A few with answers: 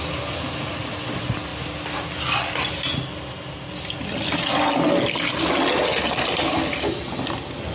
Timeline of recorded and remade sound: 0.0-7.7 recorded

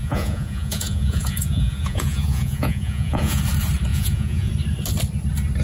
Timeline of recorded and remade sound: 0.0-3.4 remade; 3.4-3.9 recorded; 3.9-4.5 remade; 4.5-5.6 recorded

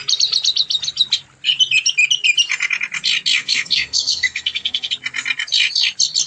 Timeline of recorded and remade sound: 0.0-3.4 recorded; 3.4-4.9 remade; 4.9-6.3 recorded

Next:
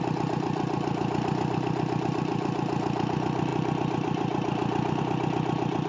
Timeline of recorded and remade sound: 0.0-5.9 recorded

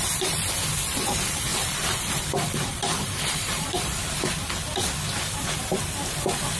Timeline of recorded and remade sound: 0.0-1.5 recorded; 1.5-4.3 remade; 4.3-6.6 recorded

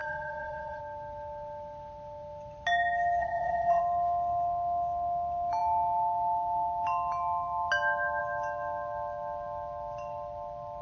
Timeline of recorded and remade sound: 0.0-0.8 remade; 0.8-3.2 recorded; 3.2-3.8 remade; 3.8-10.8 recorded

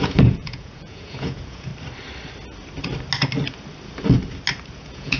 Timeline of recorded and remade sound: 0.0-1.7 remade; 1.7-4.8 recorded; 4.8-5.2 remade